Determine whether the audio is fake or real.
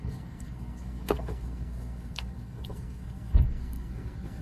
fake